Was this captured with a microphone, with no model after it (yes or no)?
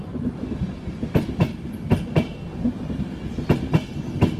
yes